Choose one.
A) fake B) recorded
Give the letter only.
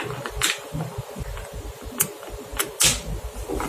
B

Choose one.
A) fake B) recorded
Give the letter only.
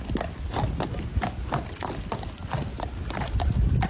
B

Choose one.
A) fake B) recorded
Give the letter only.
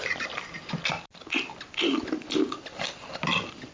B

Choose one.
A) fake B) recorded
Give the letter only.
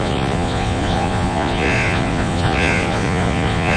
A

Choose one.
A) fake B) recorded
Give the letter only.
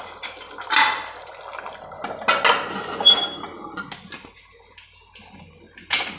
B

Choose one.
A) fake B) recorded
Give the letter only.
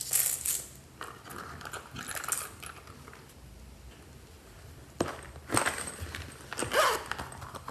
B